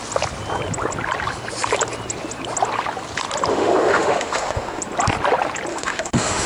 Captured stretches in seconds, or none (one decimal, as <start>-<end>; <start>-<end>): 0.0-3.5; 4.8-5.7